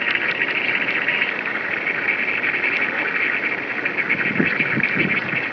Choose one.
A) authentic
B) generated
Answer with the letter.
A